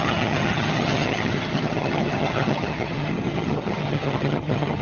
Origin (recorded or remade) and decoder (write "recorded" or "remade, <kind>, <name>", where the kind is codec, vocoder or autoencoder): remade, vocoder, HiFi-GAN